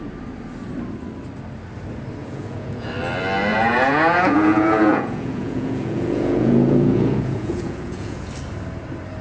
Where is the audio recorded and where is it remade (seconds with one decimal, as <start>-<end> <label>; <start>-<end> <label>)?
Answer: 0.0-2.2 recorded; 2.2-2.9 remade; 2.9-3.5 recorded; 3.5-8.3 remade; 8.3-9.2 recorded